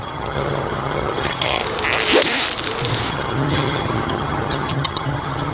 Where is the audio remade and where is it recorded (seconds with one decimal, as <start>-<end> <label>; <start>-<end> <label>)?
0.0-1.6 remade; 1.6-3.1 recorded; 3.1-5.5 remade

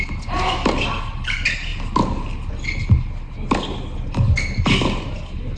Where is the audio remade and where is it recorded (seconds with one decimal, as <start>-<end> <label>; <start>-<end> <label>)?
0.0-5.6 recorded

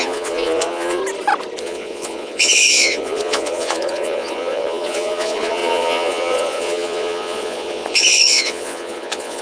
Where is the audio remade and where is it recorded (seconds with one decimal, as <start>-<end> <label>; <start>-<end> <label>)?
0.0-1.0 remade; 1.0-1.6 recorded; 1.6-9.4 remade

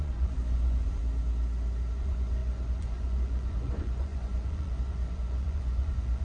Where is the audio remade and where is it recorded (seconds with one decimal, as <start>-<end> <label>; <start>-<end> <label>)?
0.0-1.0 remade; 1.0-2.0 recorded; 2.0-6.2 remade

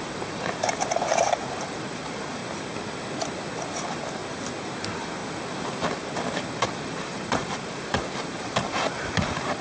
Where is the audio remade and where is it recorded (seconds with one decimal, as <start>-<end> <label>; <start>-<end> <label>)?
0.0-2.4 remade; 2.4-3.6 recorded; 3.6-4.2 remade; 4.2-4.8 recorded; 4.8-5.2 remade; 5.2-5.9 recorded; 5.9-9.6 remade

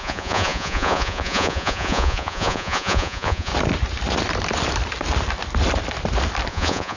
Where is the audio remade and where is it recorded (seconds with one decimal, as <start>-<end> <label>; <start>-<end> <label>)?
0.0-3.5 remade; 3.5-6.5 recorded; 6.5-7.0 remade